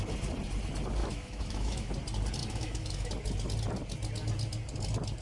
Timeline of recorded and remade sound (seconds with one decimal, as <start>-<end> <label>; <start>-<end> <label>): 0.0-1.0 recorded; 1.0-1.9 remade; 1.9-2.4 recorded; 2.4-3.1 remade; 3.1-5.2 recorded